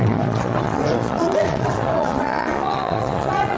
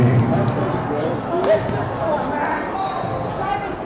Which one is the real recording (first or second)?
second